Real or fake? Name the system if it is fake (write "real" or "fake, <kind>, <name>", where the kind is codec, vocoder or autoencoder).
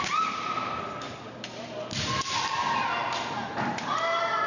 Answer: real